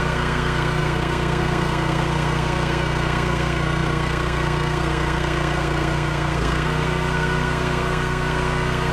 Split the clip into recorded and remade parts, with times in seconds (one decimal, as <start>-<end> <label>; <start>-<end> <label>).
0.0-8.9 remade